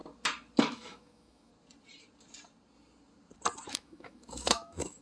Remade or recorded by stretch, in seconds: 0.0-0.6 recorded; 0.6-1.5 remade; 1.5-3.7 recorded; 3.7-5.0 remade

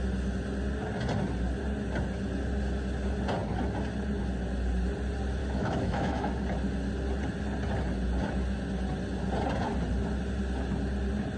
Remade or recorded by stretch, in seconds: 0.0-5.4 recorded; 5.4-6.3 remade; 6.3-11.4 recorded

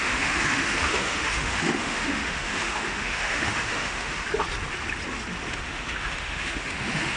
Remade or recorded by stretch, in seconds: 0.0-4.3 remade; 4.3-5.5 recorded; 5.5-7.2 remade

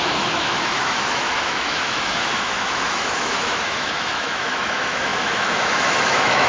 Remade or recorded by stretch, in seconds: 0.0-6.5 remade